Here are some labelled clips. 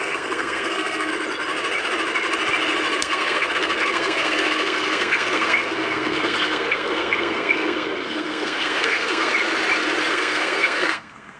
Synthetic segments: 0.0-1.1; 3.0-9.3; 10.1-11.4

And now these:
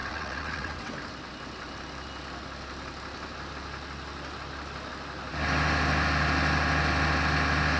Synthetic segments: 0.0-0.9